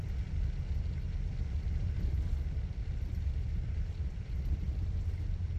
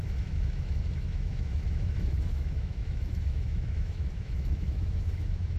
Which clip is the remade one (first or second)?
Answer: second